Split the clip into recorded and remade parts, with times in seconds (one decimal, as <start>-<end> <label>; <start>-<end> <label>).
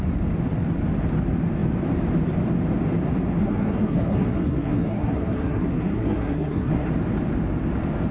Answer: 0.0-3.4 recorded; 3.4-6.9 remade; 6.9-8.1 recorded